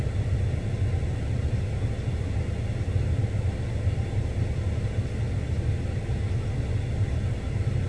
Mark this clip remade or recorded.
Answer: recorded